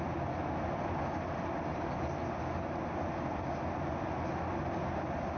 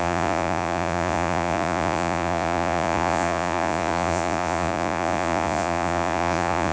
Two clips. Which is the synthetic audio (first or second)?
second